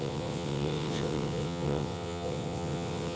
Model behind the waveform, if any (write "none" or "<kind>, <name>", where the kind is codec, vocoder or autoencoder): vocoder, WaveNeXt